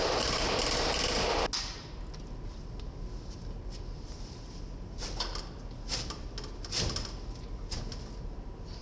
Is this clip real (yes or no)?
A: yes